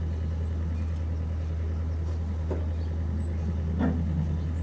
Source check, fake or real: real